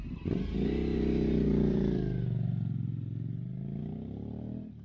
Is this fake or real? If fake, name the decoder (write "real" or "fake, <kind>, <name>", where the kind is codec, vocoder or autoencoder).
fake, vocoder, BigVGAN v2